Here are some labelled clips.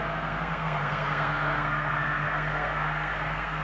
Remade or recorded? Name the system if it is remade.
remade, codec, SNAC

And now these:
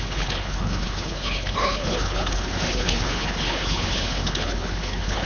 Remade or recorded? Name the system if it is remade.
remade, codec, HILCodec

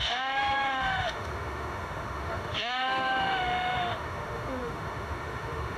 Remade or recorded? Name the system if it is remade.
remade, autoencoder, DAC-VAE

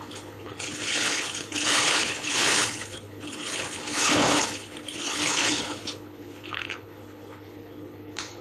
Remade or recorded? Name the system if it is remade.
remade, codec, HILCodec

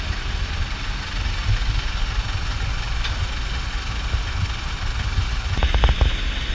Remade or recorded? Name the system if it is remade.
recorded